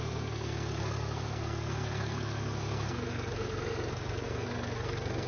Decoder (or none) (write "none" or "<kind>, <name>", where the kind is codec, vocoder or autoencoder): codec, SNAC